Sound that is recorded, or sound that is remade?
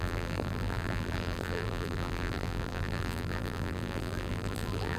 remade